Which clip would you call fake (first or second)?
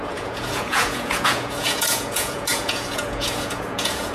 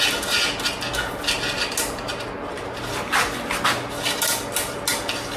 first